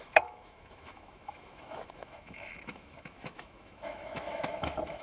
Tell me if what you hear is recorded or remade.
remade